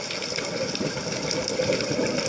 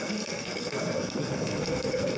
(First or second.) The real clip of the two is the first